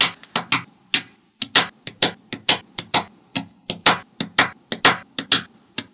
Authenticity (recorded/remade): recorded